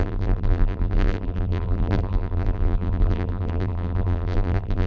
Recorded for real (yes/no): no